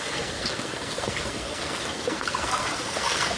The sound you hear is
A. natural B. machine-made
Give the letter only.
B